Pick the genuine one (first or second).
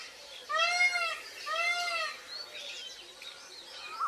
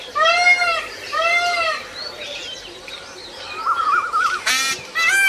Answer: first